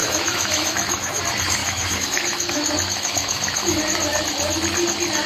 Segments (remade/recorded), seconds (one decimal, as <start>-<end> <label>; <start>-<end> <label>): 0.0-1.2 remade; 1.2-1.6 recorded; 1.6-3.8 remade; 3.8-5.3 recorded